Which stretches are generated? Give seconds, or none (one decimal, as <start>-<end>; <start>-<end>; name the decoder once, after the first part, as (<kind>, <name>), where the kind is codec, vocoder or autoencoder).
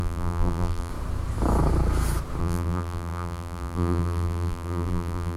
0.0-0.9 (vocoder, BigVGAN v2); 2.4-5.4